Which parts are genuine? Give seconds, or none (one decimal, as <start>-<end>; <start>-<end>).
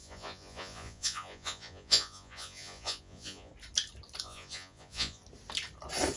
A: 3.5-4.2; 5.2-6.2